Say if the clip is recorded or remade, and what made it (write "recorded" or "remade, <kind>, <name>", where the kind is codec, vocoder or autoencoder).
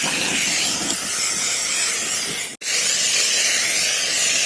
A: recorded